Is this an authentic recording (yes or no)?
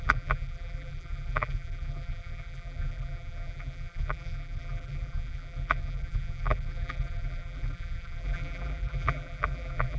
no